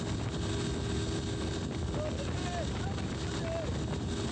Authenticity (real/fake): real